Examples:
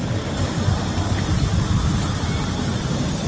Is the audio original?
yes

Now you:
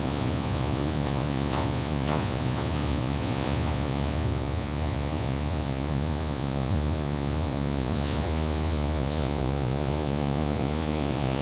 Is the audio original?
no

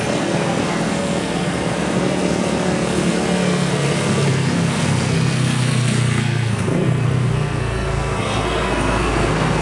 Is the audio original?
no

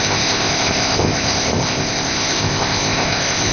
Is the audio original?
no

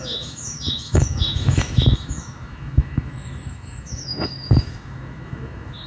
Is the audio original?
no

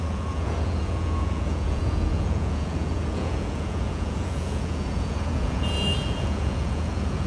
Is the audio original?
no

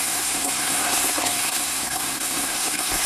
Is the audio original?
no